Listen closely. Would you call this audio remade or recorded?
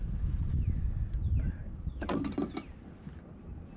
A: recorded